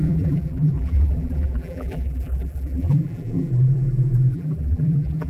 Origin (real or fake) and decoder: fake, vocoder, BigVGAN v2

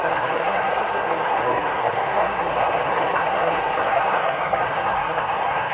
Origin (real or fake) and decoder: fake, codec, SNAC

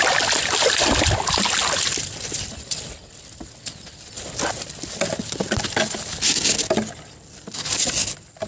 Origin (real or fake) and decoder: real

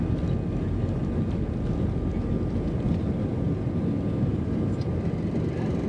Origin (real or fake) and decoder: real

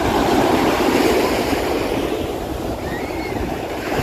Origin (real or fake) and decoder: fake, vocoder, BigVGAN v2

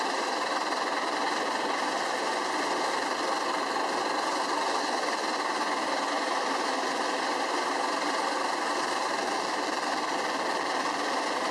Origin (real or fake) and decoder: real